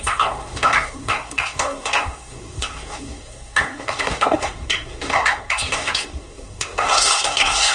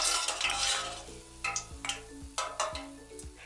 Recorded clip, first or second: second